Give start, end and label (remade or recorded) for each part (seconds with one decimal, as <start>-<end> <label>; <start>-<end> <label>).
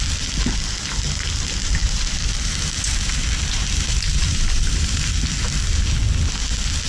0.0-1.8 recorded; 1.8-5.1 remade; 5.1-6.9 recorded